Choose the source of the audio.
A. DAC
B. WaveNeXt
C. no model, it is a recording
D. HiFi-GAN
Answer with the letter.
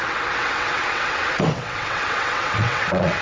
B